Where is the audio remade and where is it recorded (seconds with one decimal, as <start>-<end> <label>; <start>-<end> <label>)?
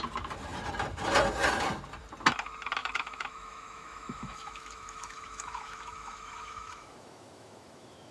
0.0-2.8 recorded; 2.8-8.1 remade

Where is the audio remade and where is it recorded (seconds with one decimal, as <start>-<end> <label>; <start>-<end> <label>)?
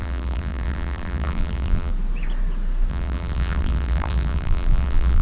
0.0-1.9 remade; 1.9-2.9 recorded; 2.9-5.2 remade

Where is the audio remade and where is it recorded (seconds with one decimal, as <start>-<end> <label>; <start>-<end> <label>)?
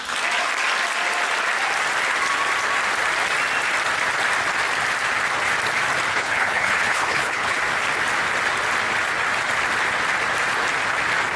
0.0-6.1 recorded; 6.1-7.6 remade; 7.6-11.4 recorded